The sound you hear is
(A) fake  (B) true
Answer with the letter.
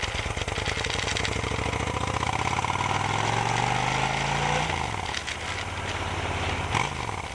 B